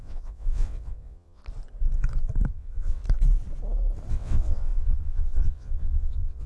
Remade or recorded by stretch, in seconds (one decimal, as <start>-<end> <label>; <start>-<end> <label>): 0.0-1.4 remade; 1.4-2.5 recorded; 2.5-3.0 remade; 3.0-4.1 recorded; 4.1-6.5 remade